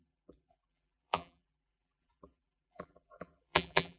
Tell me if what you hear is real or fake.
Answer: fake